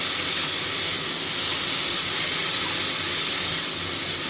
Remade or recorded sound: recorded